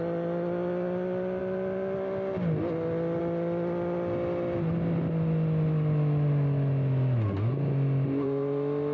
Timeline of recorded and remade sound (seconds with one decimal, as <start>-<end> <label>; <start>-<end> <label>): 0.0-8.9 recorded